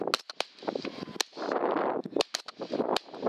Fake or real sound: real